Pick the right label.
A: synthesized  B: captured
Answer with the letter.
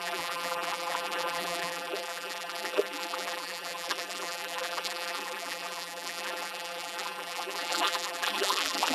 A